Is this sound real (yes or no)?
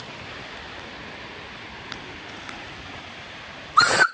yes